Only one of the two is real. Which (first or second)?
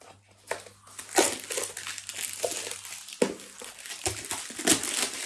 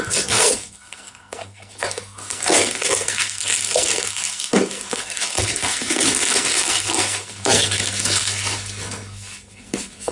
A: first